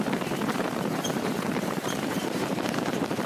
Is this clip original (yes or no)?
no